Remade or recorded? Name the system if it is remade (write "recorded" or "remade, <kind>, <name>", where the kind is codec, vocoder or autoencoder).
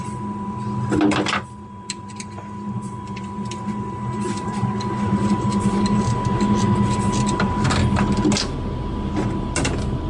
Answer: recorded